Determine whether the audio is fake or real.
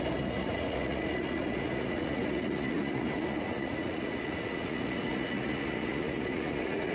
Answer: fake